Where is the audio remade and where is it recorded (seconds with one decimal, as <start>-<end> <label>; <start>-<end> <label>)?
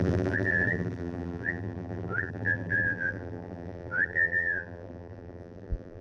0.0-6.0 remade